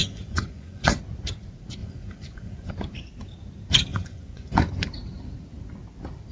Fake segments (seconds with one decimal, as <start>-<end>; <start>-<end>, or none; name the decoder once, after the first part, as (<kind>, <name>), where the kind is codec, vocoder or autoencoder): 0.0-1.0 (vocoder, Vocos); 1.8-2.7; 3.9-4.7